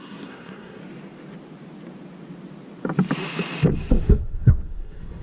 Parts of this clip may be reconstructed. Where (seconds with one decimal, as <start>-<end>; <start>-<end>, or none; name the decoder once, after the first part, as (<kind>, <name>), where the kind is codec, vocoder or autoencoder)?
0.0-0.8 (codec, SNAC); 3.9-5.2

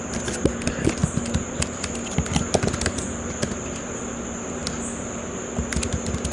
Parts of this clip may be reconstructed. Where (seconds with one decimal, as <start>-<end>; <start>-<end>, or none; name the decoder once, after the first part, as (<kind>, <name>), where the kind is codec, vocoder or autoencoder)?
none

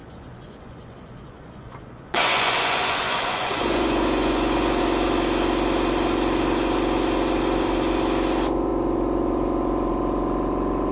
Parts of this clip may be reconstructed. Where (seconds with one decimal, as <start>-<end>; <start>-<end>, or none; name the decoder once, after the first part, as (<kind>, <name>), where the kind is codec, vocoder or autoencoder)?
0.0-4.8 (vocoder, Vocos)

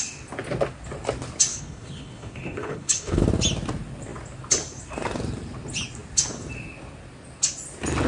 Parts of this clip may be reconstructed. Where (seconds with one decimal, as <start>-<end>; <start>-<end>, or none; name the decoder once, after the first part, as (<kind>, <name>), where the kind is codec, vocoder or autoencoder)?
1.5-3.2 (codec, HILCodec)

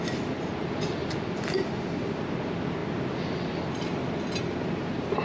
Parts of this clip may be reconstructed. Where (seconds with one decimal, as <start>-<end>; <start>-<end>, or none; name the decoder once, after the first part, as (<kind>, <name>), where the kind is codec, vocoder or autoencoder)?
none

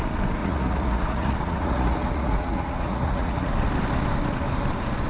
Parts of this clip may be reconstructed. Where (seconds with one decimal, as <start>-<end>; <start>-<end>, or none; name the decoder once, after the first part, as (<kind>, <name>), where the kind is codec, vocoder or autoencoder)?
0.4-3.5 (vocoder, Vocos)